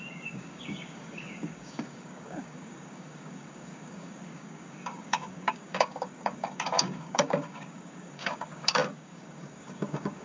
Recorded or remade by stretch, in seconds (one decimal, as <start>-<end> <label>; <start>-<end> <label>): 0.0-10.2 remade